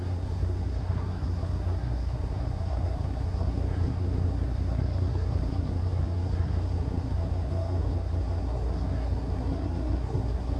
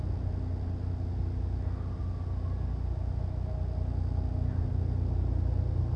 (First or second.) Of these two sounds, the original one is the second